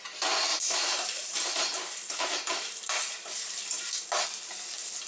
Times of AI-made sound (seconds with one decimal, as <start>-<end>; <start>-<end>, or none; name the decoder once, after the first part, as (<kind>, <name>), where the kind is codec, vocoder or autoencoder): 0.5-3.6 (vocoder, BigVGAN v2)